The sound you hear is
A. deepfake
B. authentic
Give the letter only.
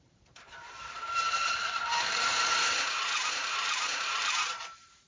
A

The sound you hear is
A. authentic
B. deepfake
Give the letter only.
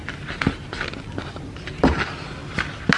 A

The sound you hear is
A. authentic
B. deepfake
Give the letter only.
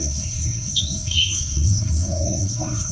B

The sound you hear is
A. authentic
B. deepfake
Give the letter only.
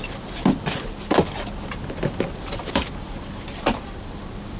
A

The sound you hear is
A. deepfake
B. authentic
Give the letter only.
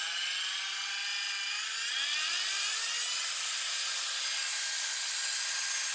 B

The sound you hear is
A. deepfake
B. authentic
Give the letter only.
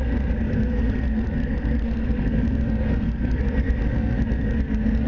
A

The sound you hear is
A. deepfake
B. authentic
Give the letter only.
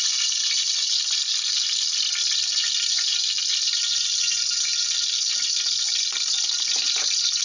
B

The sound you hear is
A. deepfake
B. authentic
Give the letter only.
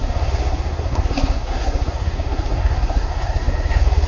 A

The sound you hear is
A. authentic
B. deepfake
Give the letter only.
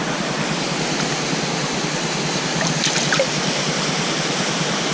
A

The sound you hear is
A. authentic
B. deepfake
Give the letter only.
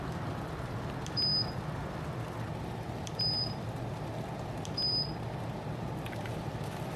B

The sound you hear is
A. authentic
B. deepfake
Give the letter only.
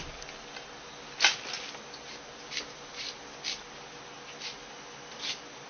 A